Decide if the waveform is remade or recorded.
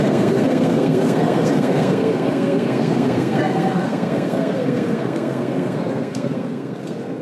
remade